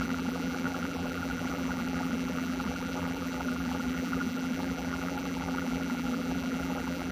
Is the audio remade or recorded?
remade